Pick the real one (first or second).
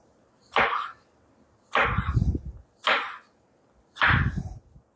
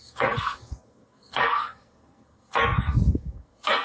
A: first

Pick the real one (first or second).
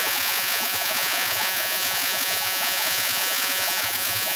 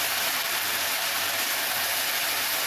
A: second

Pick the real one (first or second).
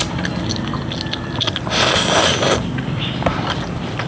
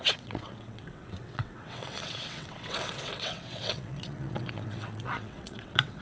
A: first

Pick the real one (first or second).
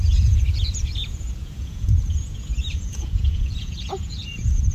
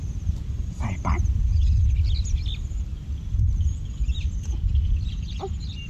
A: second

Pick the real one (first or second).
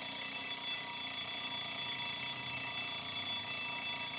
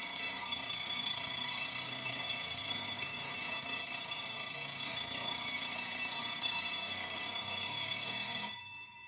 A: first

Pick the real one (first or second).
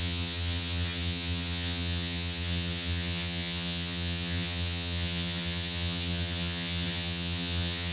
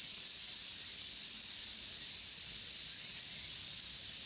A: second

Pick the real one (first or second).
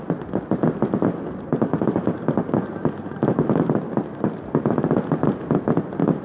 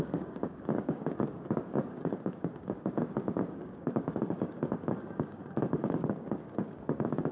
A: first